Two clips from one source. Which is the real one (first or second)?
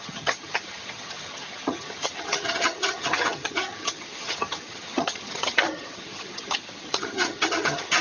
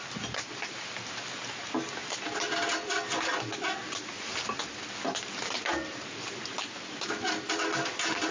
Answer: second